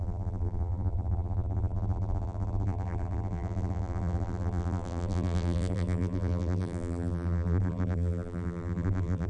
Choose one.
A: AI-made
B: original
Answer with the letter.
A